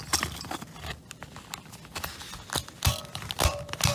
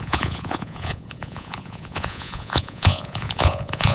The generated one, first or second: second